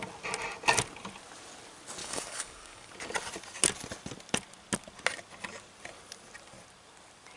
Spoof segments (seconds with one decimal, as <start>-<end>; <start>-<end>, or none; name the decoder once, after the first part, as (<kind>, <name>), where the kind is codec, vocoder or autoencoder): 2.0-2.9 (codec, DAC)